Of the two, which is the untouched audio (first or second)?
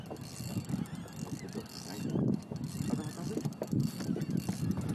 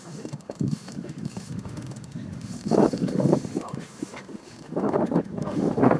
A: first